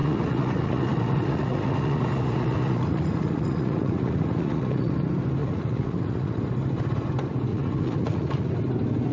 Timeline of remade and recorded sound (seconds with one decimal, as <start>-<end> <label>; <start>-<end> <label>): 0.0-4.9 remade; 4.9-5.4 recorded; 5.4-6.4 remade; 6.4-7.5 recorded; 7.5-8.5 remade; 8.5-9.1 recorded